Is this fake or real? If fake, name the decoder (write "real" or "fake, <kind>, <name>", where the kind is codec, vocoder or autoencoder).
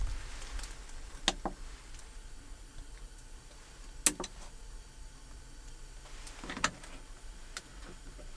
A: real